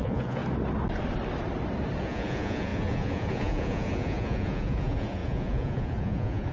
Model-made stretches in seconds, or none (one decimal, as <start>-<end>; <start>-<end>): 0.0-0.4; 2.0-6.5